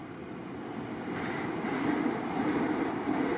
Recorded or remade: recorded